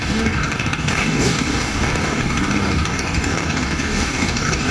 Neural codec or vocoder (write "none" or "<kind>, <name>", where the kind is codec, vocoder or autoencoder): codec, DAC